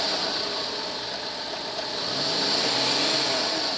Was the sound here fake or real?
real